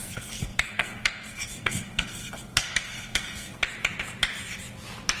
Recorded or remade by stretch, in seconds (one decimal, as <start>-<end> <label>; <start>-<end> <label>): 0.0-3.6 remade; 3.6-5.2 recorded